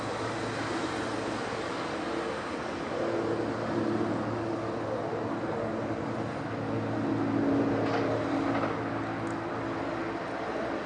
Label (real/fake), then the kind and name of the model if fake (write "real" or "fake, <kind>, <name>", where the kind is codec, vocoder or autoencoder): real